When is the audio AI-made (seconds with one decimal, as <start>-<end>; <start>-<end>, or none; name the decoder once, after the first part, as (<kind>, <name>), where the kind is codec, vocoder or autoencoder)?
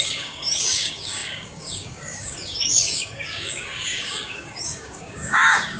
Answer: 0.0-5.8 (codec, DAC)